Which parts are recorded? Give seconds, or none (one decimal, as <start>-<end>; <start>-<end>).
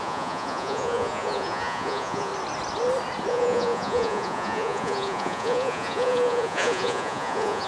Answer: 2.3-3.3